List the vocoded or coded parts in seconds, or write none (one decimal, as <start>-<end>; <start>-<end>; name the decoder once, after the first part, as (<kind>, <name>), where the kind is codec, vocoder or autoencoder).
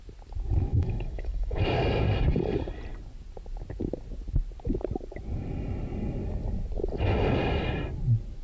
0.7-1.6 (autoencoder, DAC-VAE)